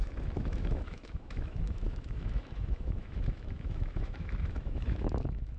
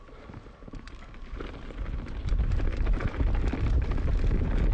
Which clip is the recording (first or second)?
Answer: second